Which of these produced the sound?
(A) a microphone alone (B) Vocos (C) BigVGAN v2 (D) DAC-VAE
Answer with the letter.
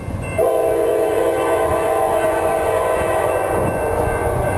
B